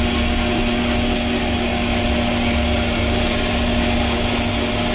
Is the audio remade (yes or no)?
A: no